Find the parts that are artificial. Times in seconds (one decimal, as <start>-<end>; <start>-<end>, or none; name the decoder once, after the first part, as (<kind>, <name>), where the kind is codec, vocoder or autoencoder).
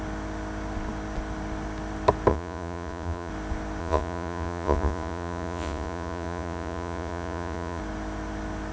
2.3-3.3 (vocoder, Vocos); 3.8-7.8